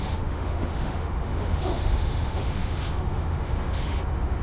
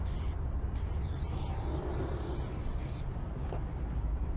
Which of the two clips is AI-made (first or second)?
first